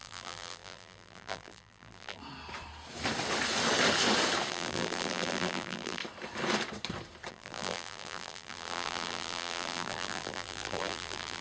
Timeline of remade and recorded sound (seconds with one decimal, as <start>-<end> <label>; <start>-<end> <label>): 0.0-2.2 remade; 2.2-4.5 recorded; 4.5-6.0 remade; 6.0-7.3 recorded; 7.3-11.4 remade